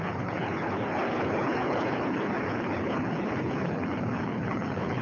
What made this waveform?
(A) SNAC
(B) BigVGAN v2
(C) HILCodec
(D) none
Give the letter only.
C